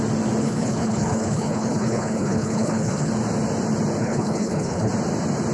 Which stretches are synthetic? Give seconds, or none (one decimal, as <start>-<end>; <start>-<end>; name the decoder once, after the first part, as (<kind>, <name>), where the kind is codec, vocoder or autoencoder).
0.4-3.1 (codec, HILCodec); 4.0-4.9

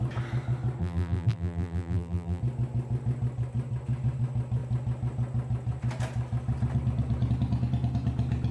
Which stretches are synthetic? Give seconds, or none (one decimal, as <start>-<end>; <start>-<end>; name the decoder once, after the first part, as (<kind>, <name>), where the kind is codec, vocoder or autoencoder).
0.8-2.4 (vocoder, BigVGAN v2)

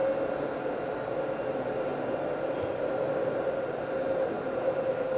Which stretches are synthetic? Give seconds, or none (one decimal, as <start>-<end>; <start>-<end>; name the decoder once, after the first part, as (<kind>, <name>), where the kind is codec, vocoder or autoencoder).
none

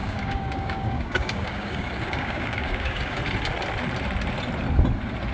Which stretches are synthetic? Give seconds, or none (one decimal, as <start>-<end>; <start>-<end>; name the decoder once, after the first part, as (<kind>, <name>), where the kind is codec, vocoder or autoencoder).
0.0-3.2 (codec, DAC)

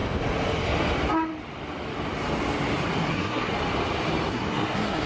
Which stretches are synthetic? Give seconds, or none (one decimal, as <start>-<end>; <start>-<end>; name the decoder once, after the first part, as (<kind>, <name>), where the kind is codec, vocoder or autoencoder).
3.1-3.5 (codec, SNAC); 4.3-5.1

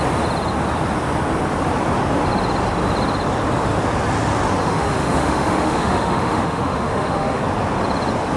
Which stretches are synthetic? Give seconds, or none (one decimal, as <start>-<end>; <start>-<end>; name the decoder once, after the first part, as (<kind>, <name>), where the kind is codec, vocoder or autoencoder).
4.6-7.4 (autoencoder, DAC-VAE)